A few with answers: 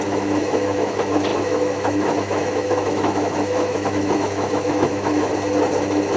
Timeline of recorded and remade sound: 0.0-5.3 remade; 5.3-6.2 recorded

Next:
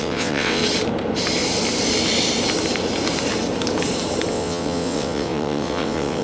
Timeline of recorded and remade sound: 0.0-0.6 remade; 0.6-4.3 recorded; 4.3-6.2 remade

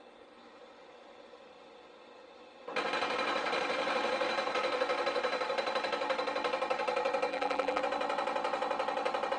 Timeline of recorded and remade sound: 0.0-7.3 recorded; 7.3-7.8 remade; 7.8-9.4 recorded

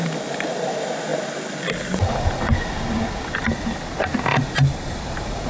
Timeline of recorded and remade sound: 0.0-5.5 recorded

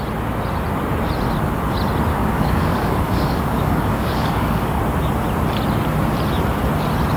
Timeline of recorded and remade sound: 0.0-2.1 recorded; 2.1-4.8 remade; 4.8-7.2 recorded

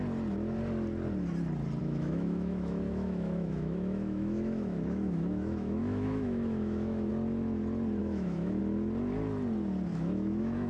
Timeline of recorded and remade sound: 0.0-1.8 recorded; 1.8-7.1 remade; 7.1-8.0 recorded; 8.0-8.6 remade; 8.6-9.9 recorded; 9.9-10.7 remade

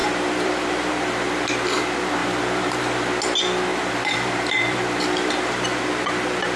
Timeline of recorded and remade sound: 0.0-0.9 remade; 0.9-2.2 recorded; 2.2-2.8 remade; 2.8-3.7 recorded; 3.7-5.8 remade; 5.8-6.6 recorded